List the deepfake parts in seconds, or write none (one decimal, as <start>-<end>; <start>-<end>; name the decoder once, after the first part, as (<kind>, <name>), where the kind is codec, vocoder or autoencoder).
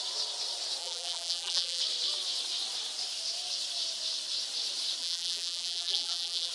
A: 0.8-1.8 (vocoder, BigVGAN v2); 5.0-6.5